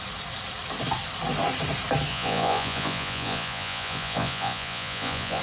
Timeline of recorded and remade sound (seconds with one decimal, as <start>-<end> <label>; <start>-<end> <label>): 0.0-2.1 recorded; 2.1-5.4 remade